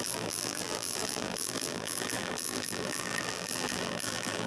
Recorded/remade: remade